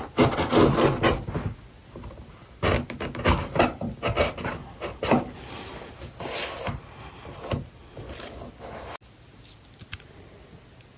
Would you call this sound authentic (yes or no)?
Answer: yes